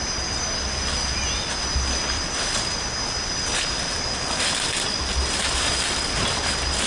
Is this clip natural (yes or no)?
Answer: yes